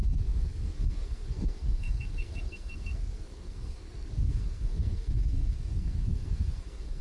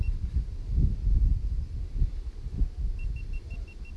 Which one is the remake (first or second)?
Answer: first